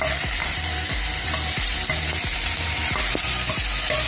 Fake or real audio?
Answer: fake